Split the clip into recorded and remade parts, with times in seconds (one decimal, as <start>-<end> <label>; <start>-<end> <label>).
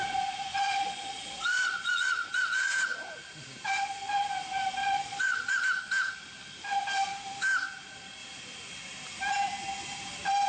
0.0-0.5 recorded; 0.5-2.7 remade; 2.7-4.8 recorded; 4.8-5.6 remade; 5.6-10.5 recorded